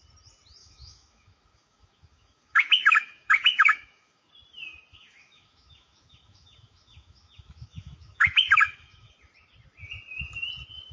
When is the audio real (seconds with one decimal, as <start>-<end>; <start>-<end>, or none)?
0.0-0.6; 4.3-4.9; 9.1-10.9